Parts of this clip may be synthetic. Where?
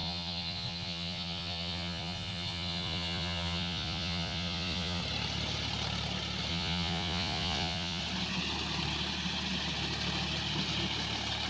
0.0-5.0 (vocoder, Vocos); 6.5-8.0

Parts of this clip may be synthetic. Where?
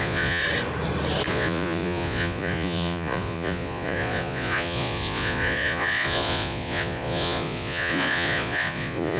0.0-0.4 (vocoder, Vocos); 1.3-9.2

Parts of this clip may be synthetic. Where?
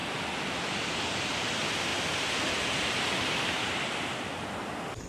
none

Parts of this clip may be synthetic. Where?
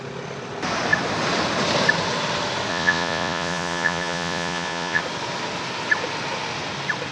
2.7-5.0 (vocoder, Vocos)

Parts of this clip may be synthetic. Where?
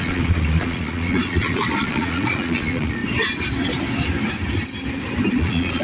0.0-3.0 (vocoder, Vocos); 5.3-5.8